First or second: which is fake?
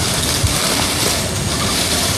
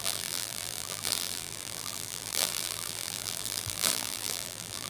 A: second